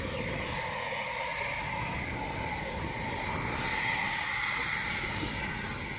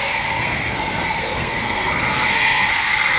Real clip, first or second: first